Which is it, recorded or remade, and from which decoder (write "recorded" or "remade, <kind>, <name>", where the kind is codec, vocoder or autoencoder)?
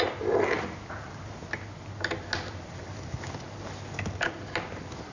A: recorded